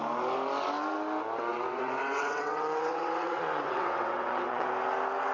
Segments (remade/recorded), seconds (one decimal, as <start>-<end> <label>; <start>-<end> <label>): 0.0-1.5 recorded; 1.5-4.7 remade; 4.7-5.3 recorded